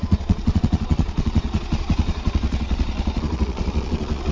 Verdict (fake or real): fake